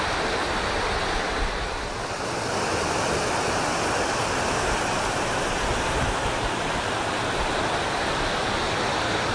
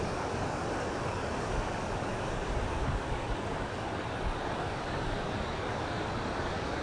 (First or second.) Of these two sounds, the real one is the first